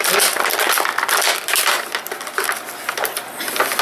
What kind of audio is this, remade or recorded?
recorded